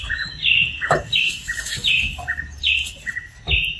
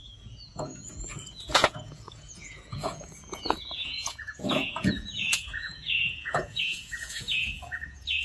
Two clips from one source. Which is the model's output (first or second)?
second